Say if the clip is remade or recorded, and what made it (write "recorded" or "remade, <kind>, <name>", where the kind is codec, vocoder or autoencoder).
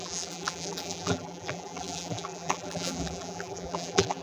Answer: remade, vocoder, BigVGAN v2